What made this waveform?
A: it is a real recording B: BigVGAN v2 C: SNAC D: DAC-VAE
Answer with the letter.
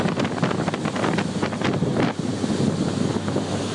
A